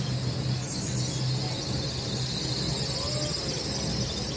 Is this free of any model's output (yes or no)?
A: yes